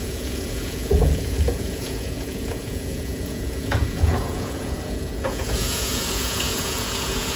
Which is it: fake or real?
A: fake